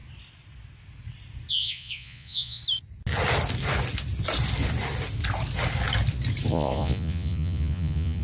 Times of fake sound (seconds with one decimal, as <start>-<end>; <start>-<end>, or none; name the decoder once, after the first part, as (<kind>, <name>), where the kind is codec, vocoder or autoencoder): 1.5-2.6 (vocoder, Vocos); 6.5-8.2